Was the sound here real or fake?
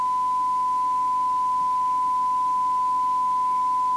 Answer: real